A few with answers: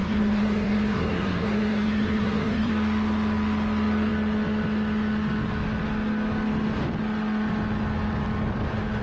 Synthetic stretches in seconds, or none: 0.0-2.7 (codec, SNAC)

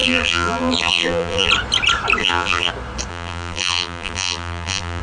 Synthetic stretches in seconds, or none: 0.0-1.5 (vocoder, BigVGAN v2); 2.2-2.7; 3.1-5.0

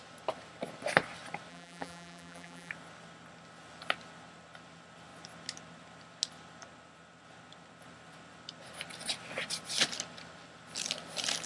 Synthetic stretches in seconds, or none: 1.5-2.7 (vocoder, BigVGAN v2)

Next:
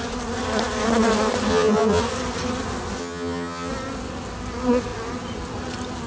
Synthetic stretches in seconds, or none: 1.5-2.0 (vocoder, HiFi-GAN); 3.0-3.7

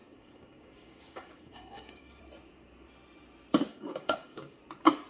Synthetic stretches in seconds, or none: 0.0-2.2 (codec, DAC); 3.7-4.6

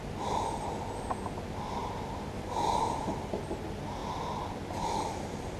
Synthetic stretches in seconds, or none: 1.8-3.1 (vocoder, BigVGAN v2)

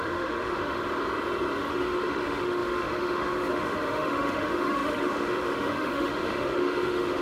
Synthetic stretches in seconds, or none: 0.0-0.8 (autoencoder, DAC-VAE); 1.7-7.2